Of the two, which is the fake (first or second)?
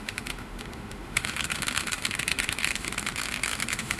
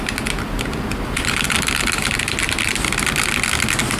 first